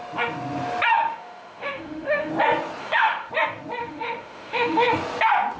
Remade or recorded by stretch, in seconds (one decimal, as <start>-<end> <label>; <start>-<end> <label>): 0.0-0.9 recorded; 0.9-2.3 remade; 2.3-2.8 recorded; 2.8-3.3 remade; 3.3-3.8 recorded; 3.8-4.9 remade; 4.9-5.6 recorded